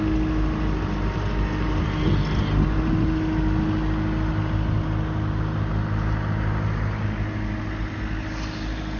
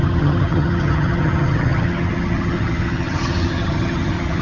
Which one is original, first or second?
first